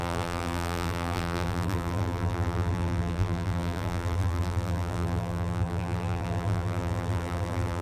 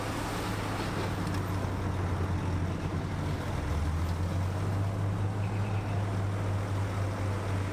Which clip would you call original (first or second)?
second